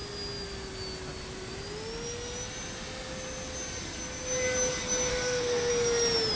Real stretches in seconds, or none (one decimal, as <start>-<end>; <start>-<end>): 0.0-5.1; 5.7-6.4